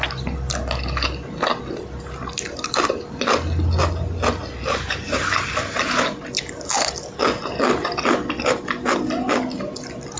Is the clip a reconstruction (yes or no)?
no